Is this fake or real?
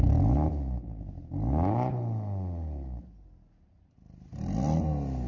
real